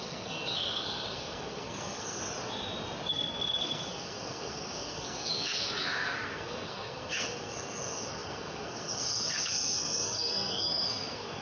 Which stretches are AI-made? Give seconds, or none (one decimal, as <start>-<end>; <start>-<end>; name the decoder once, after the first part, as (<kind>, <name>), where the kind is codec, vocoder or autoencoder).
0.0-2.2 (codec, SNAC); 3.1-11.4

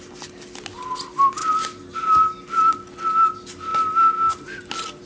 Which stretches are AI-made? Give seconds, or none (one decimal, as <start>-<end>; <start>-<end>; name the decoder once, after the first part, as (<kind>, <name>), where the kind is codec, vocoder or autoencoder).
none